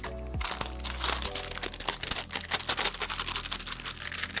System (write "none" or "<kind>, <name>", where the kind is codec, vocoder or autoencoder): none